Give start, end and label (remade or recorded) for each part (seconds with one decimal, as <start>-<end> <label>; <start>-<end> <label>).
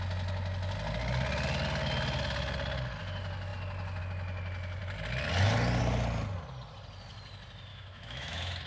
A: 0.0-7.7 recorded; 7.7-8.7 remade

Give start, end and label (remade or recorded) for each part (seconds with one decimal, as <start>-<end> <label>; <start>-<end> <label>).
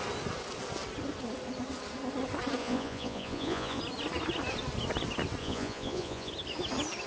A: 0.0-2.6 recorded; 2.6-3.8 remade; 3.8-5.4 recorded; 5.4-6.3 remade; 6.3-7.1 recorded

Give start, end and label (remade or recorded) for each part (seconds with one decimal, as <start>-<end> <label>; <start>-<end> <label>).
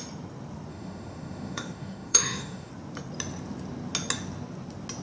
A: 0.0-0.7 recorded; 0.7-2.7 remade; 2.7-5.0 recorded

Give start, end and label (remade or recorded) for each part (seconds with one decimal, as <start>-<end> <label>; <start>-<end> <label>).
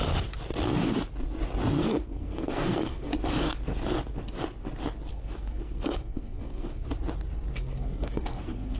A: 0.0-1.8 recorded; 1.8-3.1 remade; 3.1-5.1 recorded; 5.1-6.9 remade; 6.9-7.5 recorded; 7.5-8.8 remade